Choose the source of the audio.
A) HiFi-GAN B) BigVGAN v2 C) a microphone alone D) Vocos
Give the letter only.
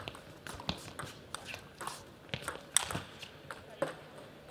C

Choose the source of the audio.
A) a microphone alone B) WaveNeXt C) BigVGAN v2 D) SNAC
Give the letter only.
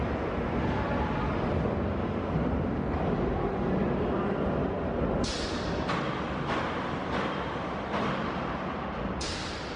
A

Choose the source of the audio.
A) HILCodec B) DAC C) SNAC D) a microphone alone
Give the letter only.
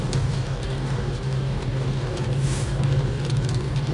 B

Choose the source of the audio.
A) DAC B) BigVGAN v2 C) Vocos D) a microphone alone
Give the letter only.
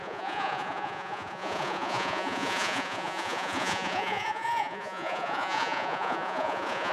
C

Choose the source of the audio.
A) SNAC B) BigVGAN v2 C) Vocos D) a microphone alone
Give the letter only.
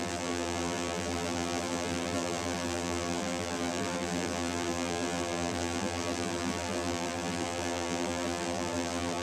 B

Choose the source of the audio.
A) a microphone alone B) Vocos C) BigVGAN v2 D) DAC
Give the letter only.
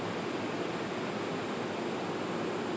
A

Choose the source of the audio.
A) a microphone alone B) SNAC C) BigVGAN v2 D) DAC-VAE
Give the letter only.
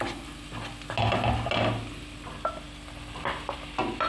A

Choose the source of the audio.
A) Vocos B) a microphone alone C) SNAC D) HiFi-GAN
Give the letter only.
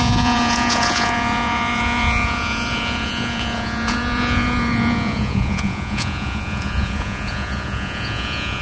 A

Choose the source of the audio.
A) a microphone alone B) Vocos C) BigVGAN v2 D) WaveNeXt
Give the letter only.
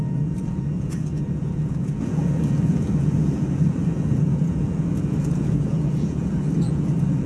B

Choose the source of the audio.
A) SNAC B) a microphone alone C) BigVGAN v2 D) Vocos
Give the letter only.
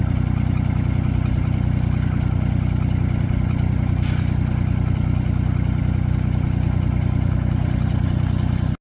B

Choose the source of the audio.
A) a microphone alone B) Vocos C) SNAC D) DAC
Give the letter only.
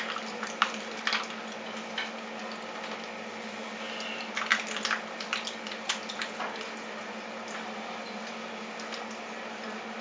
A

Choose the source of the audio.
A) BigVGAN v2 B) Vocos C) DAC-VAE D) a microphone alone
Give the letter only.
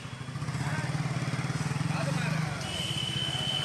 D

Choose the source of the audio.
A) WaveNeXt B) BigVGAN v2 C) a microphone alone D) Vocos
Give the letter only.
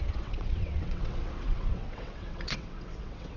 A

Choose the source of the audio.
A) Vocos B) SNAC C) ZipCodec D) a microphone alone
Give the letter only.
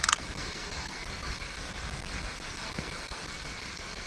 B